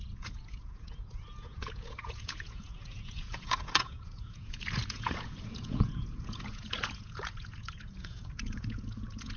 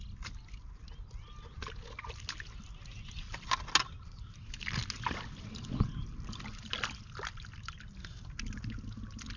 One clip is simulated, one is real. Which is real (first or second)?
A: second